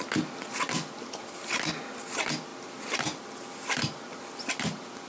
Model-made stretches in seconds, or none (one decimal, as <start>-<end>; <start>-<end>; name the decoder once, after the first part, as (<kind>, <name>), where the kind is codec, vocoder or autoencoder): none